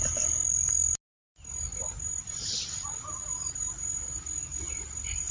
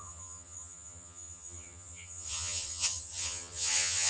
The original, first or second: first